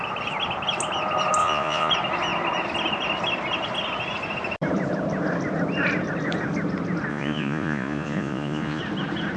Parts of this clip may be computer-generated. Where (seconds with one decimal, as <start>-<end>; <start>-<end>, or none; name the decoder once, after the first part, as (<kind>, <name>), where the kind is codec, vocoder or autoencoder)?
1.4-1.9 (vocoder, Vocos); 7.1-8.8